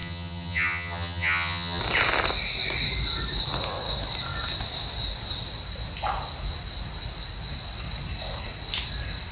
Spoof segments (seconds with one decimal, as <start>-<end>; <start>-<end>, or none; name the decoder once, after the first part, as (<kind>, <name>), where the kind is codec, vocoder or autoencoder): 0.0-1.8 (vocoder, HiFi-GAN)